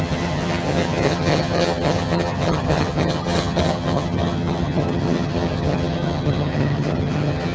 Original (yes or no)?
no